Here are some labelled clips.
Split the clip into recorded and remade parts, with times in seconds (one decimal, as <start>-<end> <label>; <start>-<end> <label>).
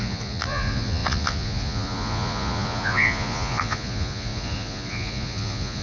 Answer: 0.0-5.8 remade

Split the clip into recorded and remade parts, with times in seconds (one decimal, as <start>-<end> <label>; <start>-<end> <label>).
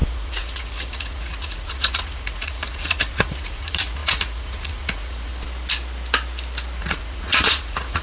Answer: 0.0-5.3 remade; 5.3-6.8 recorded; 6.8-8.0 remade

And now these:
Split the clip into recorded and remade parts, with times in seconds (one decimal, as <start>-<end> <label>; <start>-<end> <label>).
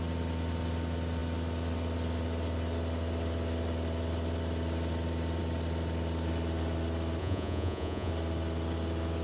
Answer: 0.0-7.2 recorded; 7.2-8.1 remade; 8.1-9.2 recorded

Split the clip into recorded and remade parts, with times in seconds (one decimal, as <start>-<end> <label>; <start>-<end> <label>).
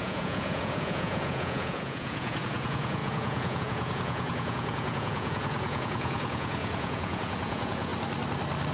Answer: 0.0-7.9 remade; 7.9-8.7 recorded